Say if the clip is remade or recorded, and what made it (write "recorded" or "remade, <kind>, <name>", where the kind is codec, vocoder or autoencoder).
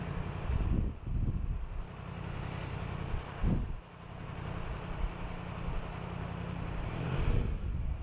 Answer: recorded